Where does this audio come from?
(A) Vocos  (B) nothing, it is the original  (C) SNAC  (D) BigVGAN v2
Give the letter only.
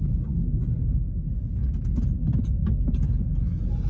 B